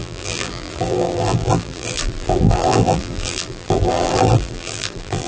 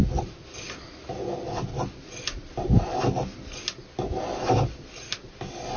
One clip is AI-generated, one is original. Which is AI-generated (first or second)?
first